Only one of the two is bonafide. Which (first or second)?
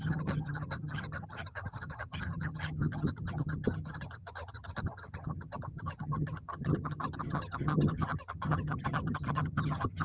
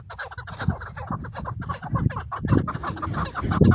second